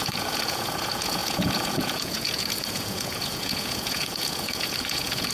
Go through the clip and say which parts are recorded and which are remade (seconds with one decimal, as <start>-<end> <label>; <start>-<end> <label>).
0.0-5.3 remade